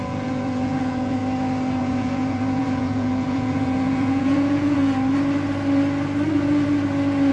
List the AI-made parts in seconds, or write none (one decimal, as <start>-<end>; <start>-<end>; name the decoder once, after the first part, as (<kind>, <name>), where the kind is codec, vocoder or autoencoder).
0.0-1.2 (vocoder, Vocos); 1.8-4.8